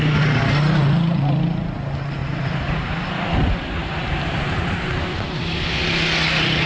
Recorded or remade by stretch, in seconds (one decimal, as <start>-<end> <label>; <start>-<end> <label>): 0.0-2.2 recorded; 2.2-3.2 remade; 3.2-3.8 recorded; 3.8-4.9 remade; 4.9-6.7 recorded